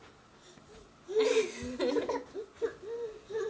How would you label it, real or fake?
real